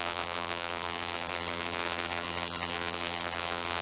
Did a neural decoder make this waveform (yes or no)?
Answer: yes